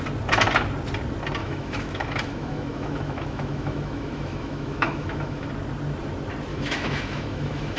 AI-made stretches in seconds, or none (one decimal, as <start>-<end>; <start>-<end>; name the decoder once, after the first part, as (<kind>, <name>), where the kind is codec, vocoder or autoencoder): 1.4-5.5 (autoencoder, DAC-VAE); 6.5-7.8